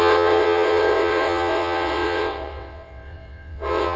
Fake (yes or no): yes